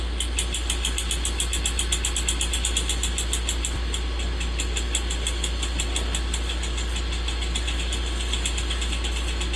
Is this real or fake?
real